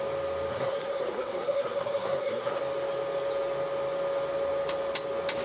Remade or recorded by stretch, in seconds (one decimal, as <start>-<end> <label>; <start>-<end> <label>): 0.0-0.5 recorded; 0.5-2.6 remade; 2.6-5.4 recorded